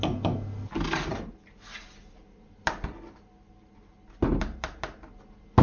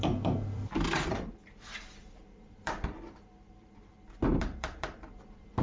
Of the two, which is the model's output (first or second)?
second